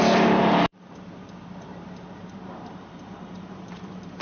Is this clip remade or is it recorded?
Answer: remade